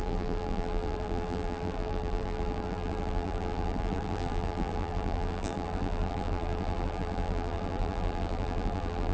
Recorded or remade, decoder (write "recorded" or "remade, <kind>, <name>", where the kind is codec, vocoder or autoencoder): remade, vocoder, BigVGAN v2